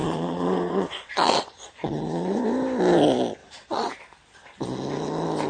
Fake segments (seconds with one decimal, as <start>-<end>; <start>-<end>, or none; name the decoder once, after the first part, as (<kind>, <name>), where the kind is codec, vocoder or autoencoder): 0.0-2.4 (vocoder, Vocos); 3.4-3.9